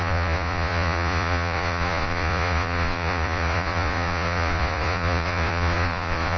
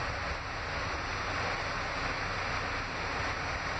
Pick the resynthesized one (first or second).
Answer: first